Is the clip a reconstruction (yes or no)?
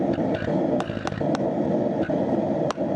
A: no